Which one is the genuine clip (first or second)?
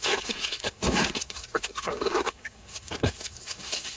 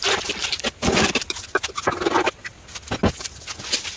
second